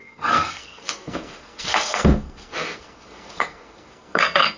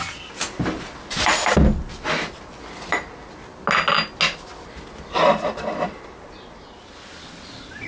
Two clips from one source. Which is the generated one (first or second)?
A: first